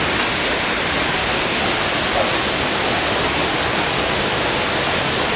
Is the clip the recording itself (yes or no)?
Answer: yes